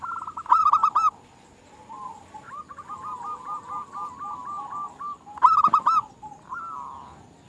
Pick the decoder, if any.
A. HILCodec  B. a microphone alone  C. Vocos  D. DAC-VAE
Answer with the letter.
B